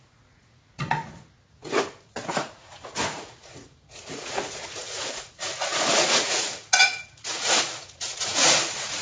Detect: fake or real fake